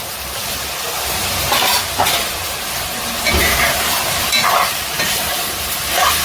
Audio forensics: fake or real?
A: real